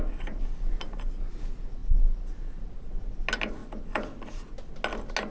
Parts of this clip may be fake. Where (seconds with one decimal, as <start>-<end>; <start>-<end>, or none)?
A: none